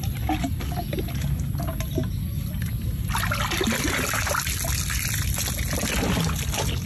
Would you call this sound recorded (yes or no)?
yes